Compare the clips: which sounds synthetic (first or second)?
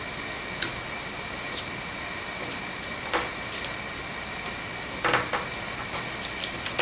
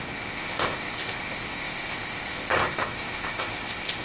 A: second